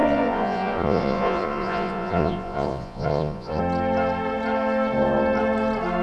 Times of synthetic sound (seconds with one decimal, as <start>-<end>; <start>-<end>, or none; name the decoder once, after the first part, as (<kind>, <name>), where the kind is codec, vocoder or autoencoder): 0.0-3.6 (vocoder, Vocos)

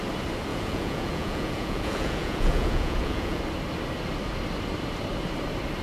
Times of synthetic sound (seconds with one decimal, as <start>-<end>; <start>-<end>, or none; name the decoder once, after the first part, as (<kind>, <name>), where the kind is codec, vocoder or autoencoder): 0.5-3.4 (vocoder, Vocos)

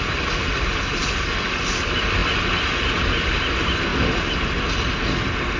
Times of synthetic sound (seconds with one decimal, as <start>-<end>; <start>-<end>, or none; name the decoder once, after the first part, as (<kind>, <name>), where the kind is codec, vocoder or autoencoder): none

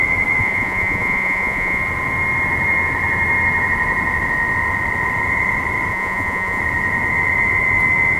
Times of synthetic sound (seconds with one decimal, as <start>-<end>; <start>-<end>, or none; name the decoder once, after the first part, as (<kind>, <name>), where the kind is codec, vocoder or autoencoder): 0.4-1.8 (vocoder, Vocos); 5.9-6.6

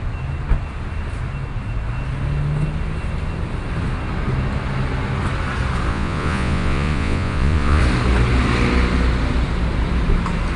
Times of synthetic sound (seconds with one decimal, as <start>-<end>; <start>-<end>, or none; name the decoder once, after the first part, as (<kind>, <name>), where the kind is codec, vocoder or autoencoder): 5.9-7.8 (vocoder, Vocos)

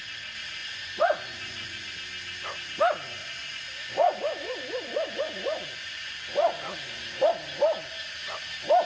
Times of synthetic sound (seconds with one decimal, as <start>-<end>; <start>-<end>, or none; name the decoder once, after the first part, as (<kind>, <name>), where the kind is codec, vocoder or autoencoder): 0.6-1.9 (vocoder, Vocos); 3.2-7.3

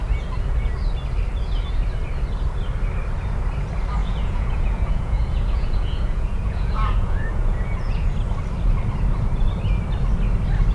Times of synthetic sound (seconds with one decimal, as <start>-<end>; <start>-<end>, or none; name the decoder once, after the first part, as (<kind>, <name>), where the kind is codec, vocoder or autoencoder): 4.0-8.1 (vocoder, Vocos)